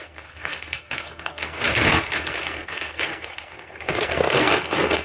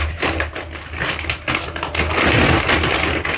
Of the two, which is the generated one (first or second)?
first